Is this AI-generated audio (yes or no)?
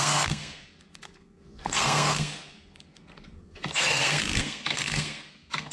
yes